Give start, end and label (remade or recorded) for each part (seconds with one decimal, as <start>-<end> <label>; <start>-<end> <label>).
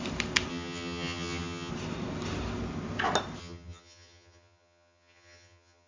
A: 0.0-0.5 recorded; 0.5-1.7 remade; 1.7-3.4 recorded; 3.4-5.9 remade